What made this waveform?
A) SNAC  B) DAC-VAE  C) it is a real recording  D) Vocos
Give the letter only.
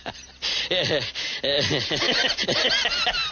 C